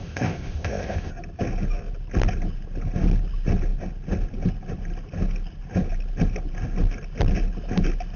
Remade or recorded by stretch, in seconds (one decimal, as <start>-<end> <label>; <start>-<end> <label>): 0.0-1.1 remade; 1.1-8.2 recorded